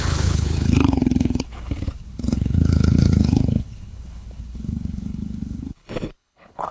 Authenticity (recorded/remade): remade